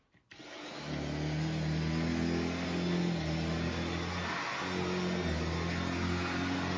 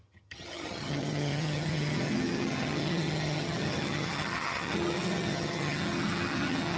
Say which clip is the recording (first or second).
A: first